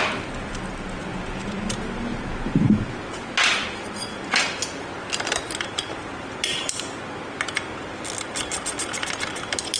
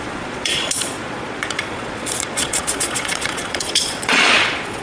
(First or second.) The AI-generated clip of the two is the second